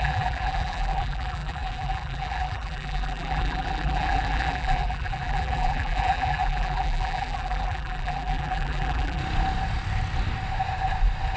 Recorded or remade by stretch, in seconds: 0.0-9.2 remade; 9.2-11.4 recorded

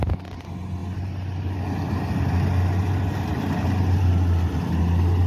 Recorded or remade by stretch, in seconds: 0.0-5.3 recorded

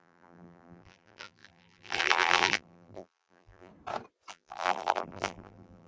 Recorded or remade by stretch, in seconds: 0.0-3.7 remade; 3.7-4.3 recorded; 4.3-5.9 remade

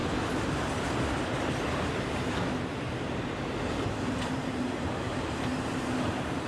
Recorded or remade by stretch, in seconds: 0.0-3.7 recorded; 3.7-5.5 remade; 5.5-6.1 recorded; 6.1-6.5 remade

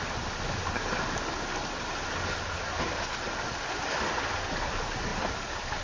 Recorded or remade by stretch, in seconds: 0.0-5.1 recorded; 5.1-5.8 remade

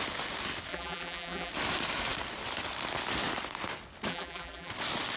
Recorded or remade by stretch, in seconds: 0.0-0.7 recorded; 0.7-1.5 remade; 1.5-4.1 recorded; 4.1-4.7 remade; 4.7-5.2 recorded